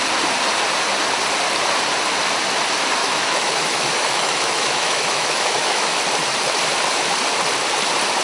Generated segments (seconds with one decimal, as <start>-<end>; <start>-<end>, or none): 3.0-6.0